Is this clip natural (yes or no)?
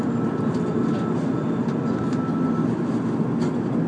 yes